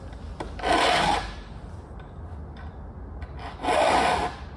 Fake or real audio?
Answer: real